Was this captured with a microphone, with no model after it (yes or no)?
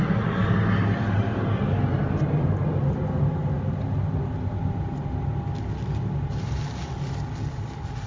yes